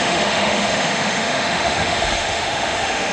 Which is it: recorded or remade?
remade